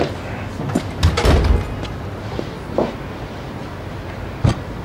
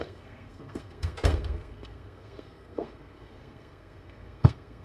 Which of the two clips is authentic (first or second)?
first